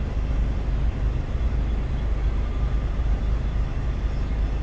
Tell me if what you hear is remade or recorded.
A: recorded